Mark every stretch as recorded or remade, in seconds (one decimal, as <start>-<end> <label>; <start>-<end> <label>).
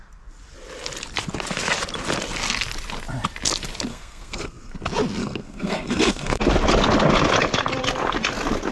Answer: 0.0-3.9 recorded; 3.9-4.7 remade; 4.7-5.2 recorded; 5.2-6.4 remade; 6.4-8.7 recorded